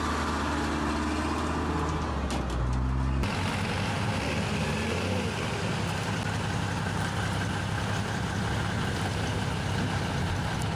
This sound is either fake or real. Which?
real